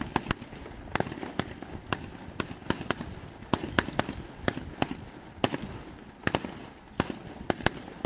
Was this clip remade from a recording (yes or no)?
no